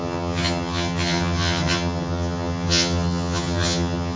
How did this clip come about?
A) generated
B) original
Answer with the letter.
A